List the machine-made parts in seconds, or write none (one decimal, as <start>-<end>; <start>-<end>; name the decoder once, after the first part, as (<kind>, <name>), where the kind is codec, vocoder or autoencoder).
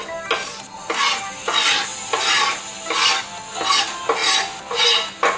none